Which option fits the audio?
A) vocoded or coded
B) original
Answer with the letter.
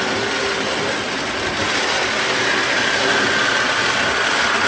B